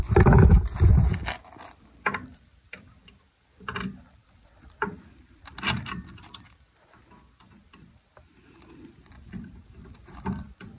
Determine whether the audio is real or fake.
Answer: fake